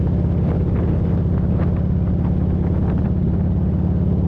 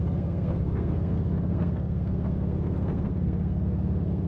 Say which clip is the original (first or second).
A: first